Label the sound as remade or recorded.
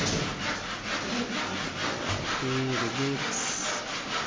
recorded